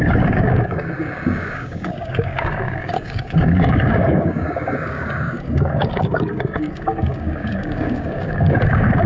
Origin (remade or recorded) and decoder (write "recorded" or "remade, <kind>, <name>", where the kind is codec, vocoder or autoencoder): remade, codec, DAC